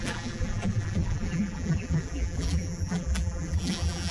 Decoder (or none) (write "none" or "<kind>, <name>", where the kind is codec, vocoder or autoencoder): vocoder, BigVGAN v2